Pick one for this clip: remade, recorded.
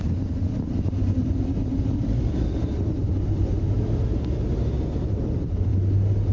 recorded